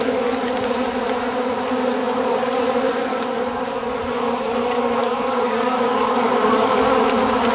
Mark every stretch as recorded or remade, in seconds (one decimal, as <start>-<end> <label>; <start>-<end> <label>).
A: 0.0-2.0 recorded; 2.0-2.6 remade; 2.6-3.1 recorded; 3.1-3.6 remade; 3.6-5.0 recorded; 5.0-6.8 remade; 6.8-7.5 recorded

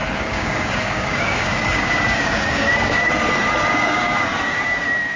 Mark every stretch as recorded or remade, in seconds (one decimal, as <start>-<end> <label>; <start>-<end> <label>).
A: 0.0-3.1 remade; 3.1-3.7 recorded; 3.7-5.2 remade

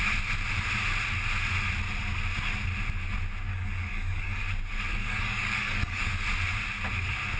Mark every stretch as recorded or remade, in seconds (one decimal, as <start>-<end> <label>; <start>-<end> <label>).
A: 0.0-3.5 recorded; 3.5-4.4 remade; 4.4-5.0 recorded; 5.0-6.1 remade; 6.1-7.4 recorded

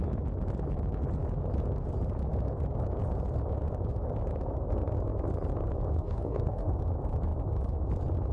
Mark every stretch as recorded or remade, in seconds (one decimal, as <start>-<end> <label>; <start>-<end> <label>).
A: 0.0-5.9 recorded; 5.9-6.7 remade; 6.7-8.3 recorded

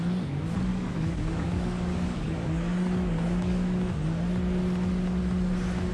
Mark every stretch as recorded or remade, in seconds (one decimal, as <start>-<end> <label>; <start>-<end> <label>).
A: 0.0-0.7 recorded; 0.7-4.2 remade; 4.2-5.9 recorded

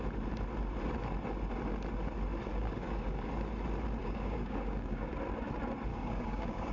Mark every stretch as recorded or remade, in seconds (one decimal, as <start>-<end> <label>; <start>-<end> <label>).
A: 0.0-2.5 recorded; 2.5-3.3 remade; 3.3-4.0 recorded; 4.0-5.1 remade; 5.1-5.9 recorded; 5.9-6.7 remade